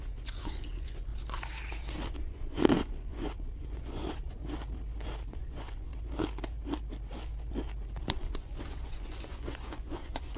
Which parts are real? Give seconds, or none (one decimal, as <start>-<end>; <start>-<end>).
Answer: 1.1-2.1; 4.4-5.3; 5.9-8.0